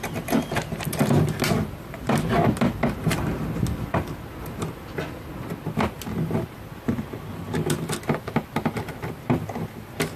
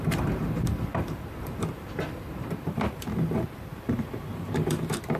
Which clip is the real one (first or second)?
first